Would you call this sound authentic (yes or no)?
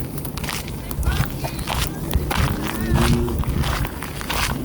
yes